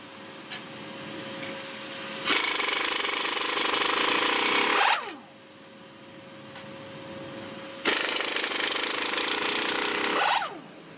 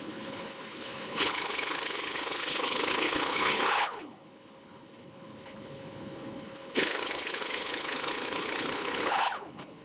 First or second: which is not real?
second